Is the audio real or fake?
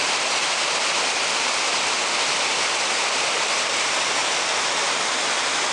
real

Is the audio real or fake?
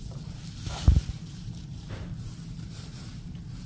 fake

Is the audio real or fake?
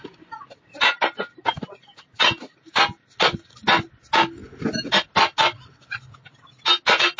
real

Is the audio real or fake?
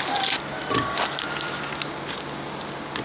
real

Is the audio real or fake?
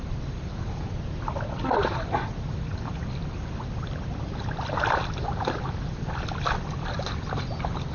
real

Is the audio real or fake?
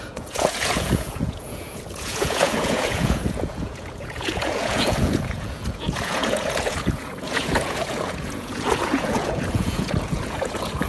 fake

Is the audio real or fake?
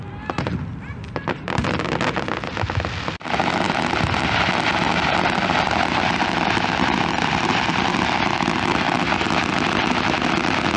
real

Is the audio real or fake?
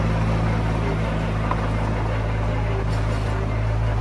real